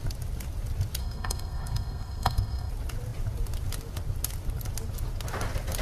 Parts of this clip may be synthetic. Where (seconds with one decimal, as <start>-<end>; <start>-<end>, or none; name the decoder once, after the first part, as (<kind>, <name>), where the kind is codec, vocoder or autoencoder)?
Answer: 1.0-2.7 (codec, SNAC)